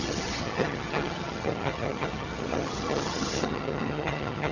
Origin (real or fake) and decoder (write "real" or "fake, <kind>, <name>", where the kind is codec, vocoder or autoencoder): fake, vocoder, HiFi-GAN